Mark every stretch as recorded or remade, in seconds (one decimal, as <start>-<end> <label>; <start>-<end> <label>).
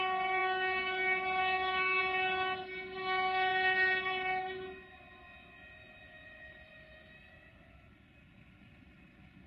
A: 0.0-0.4 recorded; 0.4-2.0 remade; 2.0-9.5 recorded